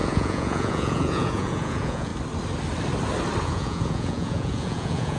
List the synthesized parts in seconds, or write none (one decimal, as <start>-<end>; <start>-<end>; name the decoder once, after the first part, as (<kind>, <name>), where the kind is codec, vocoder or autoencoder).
0.0-2.1 (vocoder, Vocos); 3.4-5.2